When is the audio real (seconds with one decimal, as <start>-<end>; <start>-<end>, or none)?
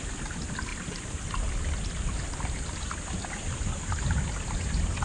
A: 0.0-5.0